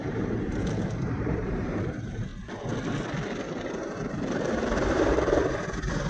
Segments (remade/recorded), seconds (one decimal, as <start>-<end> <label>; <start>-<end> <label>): 0.0-2.3 remade; 2.3-3.5 recorded; 3.5-6.1 remade